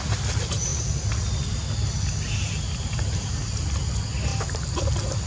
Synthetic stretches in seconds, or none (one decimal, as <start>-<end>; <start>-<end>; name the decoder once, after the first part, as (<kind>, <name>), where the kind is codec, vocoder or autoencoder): 0.7-3.3 (vocoder, BigVGAN v2); 4.3-4.8